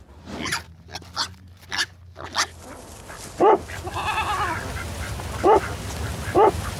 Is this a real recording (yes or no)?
yes